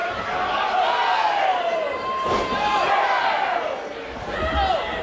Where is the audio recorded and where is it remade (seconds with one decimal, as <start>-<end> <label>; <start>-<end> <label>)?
0.0-5.0 recorded